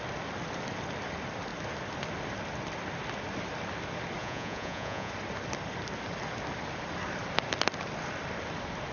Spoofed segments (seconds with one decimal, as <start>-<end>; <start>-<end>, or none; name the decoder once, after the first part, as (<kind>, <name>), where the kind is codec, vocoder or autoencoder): 4.2-5.1 (vocoder, Vocos)